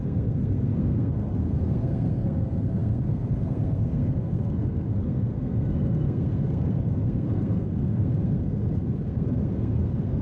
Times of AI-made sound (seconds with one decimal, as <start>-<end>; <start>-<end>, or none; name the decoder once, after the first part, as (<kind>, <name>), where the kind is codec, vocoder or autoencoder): 0.0-10.2 (codec, SNAC)